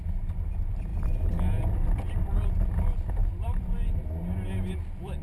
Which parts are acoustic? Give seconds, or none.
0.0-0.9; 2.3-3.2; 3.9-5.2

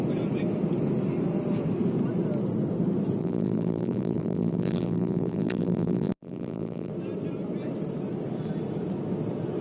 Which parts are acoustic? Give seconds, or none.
0.0-3.2; 6.9-9.6

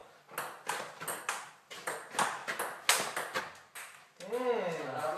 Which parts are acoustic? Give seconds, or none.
0.0-5.2

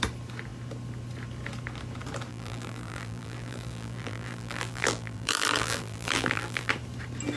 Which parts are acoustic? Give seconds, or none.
0.0-2.3; 6.7-7.4

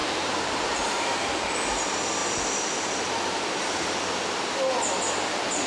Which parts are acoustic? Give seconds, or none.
1.4-5.7

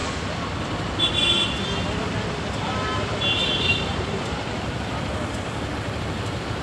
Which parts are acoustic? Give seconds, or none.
0.8-3.4; 5.7-6.6

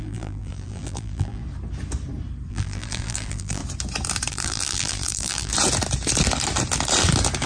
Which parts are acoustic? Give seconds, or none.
1.4-2.5; 3.6-4.3; 5.5-7.5

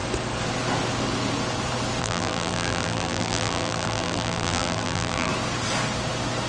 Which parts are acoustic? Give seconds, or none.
0.0-2.0; 5.3-6.5